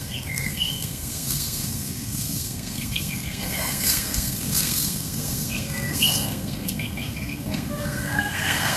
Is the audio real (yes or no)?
no